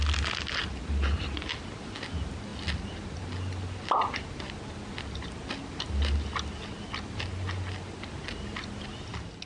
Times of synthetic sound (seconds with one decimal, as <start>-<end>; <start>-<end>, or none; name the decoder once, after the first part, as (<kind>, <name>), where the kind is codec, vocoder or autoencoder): none